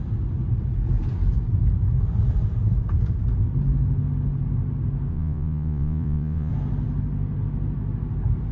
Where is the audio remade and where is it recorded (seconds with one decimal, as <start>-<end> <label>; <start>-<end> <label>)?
0.0-5.1 recorded; 5.1-6.5 remade; 6.5-8.5 recorded